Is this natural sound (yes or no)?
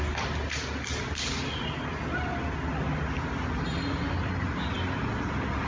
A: yes